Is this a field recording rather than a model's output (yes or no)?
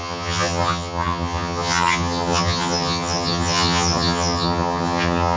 no